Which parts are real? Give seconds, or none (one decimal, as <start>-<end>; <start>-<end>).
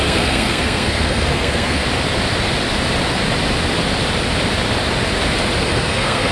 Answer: 1.8-5.6